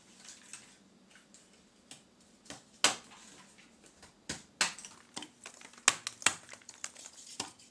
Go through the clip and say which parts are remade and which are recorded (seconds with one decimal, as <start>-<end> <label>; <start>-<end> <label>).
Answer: 0.0-6.3 recorded; 6.3-7.3 remade; 7.3-7.7 recorded